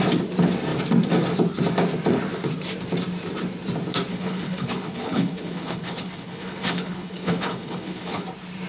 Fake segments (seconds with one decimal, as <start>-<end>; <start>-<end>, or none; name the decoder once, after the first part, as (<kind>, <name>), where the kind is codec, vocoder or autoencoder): 4.1-8.2 (codec, HILCodec)